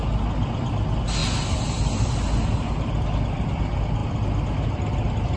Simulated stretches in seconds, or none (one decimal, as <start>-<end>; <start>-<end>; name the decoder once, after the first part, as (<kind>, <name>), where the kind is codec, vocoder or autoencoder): none